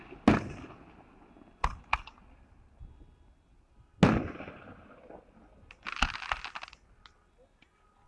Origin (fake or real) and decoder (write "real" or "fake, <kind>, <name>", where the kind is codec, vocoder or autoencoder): real